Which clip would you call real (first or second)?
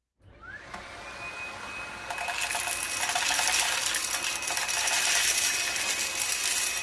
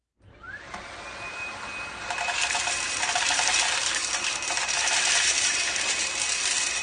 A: first